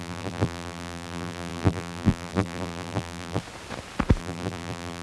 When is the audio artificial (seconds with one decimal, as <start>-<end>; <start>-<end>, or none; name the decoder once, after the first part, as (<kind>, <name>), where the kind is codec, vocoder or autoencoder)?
0.0-3.4 (vocoder, BigVGAN v2); 4.2-5.0

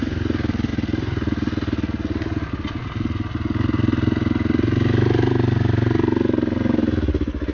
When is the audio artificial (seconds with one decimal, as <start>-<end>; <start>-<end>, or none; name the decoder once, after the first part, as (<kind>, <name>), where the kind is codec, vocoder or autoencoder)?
none

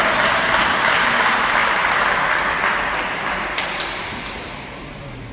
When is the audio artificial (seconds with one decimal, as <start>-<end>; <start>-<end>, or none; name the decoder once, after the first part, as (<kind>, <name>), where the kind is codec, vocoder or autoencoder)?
none

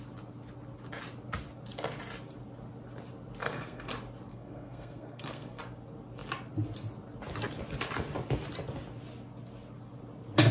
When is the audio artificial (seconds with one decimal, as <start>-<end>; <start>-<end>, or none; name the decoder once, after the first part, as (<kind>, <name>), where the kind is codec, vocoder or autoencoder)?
3.4-3.9 (codec, SNAC); 4.3-5.6

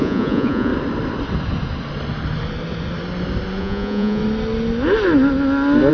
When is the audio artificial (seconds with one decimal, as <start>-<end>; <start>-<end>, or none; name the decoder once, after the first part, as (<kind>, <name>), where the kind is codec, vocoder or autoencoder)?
0.0-0.7 (vocoder, Vocos); 3.6-4.2

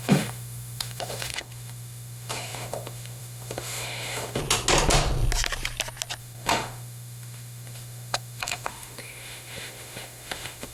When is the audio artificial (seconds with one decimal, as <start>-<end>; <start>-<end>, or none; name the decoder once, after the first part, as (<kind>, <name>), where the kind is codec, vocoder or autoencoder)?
0.0-4.4 (autoencoder, DAC-VAE); 6.2-10.7